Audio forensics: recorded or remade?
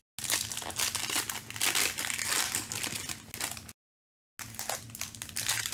recorded